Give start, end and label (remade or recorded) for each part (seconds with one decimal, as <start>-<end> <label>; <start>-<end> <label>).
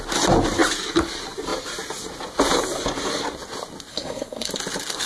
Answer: 0.0-3.9 recorded; 3.9-4.5 remade; 4.5-5.1 recorded